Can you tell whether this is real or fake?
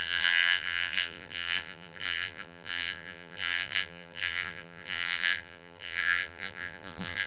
fake